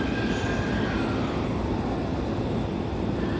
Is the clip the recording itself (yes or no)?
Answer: yes